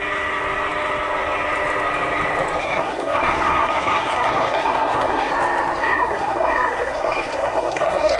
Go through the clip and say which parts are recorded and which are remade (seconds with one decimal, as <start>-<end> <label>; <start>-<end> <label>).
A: 0.0-2.6 recorded; 2.6-5.3 remade; 5.3-5.8 recorded; 5.8-8.2 remade